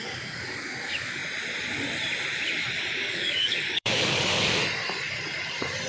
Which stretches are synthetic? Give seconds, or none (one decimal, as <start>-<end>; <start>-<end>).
0.0-1.2; 3.0-4.6